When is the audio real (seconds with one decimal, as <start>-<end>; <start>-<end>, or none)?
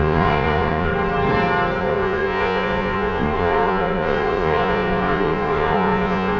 0.9-1.8